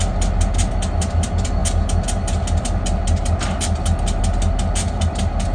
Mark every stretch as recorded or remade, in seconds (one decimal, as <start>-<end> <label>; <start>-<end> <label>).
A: 0.0-5.5 recorded